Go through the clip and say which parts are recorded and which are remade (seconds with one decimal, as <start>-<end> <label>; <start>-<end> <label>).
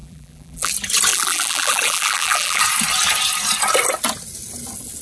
0.0-0.7 remade; 0.7-1.1 recorded; 1.1-2.6 remade; 2.6-5.0 recorded